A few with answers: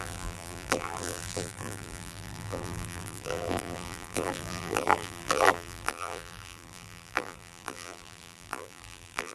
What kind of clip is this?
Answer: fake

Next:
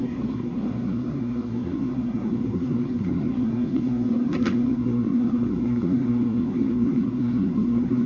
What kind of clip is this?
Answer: fake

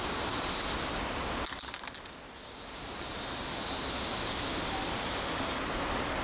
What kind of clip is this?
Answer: real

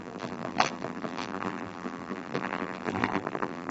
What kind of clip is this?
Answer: fake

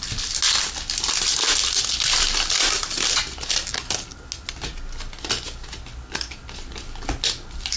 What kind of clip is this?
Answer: real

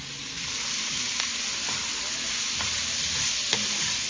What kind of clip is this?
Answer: real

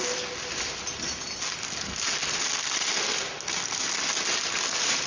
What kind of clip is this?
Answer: real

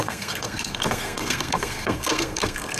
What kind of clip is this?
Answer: fake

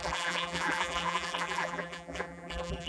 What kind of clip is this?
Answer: fake